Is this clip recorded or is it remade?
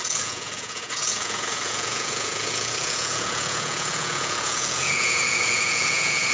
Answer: remade